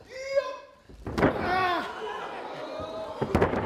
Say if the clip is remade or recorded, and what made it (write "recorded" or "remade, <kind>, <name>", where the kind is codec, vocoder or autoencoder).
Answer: recorded